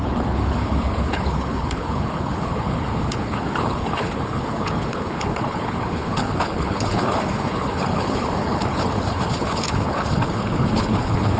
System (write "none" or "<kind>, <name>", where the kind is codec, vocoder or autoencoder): codec, HILCodec